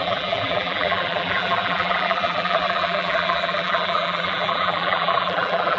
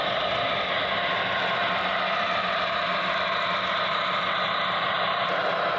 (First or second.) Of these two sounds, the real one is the second